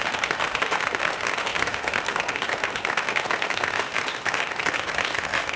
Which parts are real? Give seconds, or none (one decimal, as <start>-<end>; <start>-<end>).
none